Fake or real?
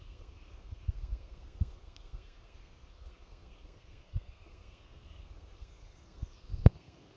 fake